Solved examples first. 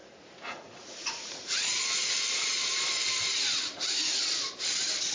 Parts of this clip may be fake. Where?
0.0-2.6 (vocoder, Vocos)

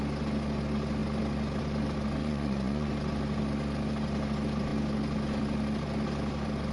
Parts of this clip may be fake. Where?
2.2-2.9 (vocoder, Vocos)

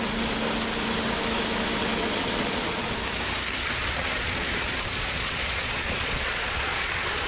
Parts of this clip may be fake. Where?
2.0-2.9 (vocoder, Vocos); 3.6-7.3